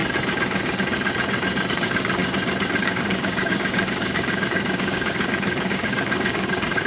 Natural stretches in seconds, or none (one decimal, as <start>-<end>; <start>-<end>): 0.0-1.7; 2.2-2.8